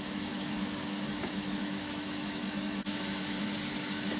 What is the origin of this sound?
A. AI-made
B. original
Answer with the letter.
A